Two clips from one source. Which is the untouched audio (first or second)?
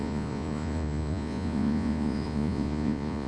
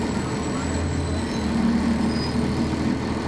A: second